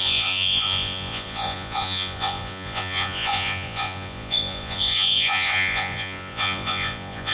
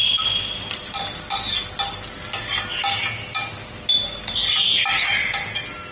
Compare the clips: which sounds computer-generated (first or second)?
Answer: first